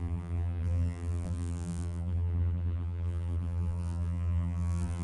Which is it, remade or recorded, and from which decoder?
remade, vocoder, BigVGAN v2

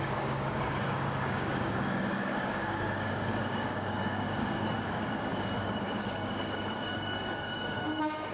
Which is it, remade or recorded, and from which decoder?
remade, codec, DAC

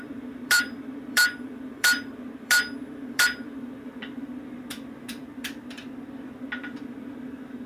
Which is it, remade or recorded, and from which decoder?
remade, vocoder, BigVGAN v2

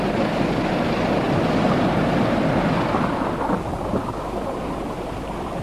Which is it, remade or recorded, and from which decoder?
recorded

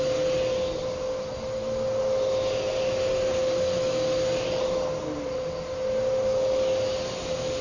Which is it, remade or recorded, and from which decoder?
recorded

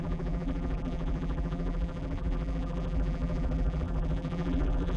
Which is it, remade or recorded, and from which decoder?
remade, vocoder, BigVGAN v2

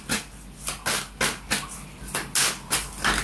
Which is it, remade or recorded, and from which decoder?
recorded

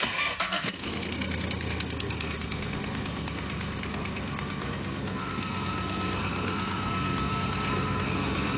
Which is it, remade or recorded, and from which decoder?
remade, codec, SNAC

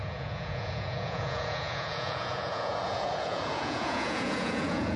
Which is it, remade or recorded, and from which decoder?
remade, vocoder, Vocos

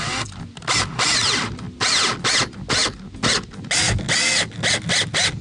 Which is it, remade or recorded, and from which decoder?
recorded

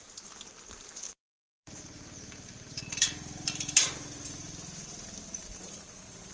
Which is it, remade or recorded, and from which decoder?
remade, vocoder, BigVGAN v2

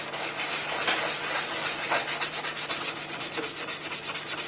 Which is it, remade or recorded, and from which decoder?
recorded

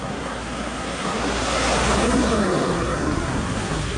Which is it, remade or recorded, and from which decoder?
remade, codec, SNAC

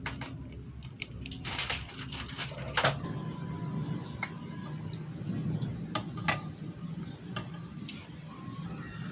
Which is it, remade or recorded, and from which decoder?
recorded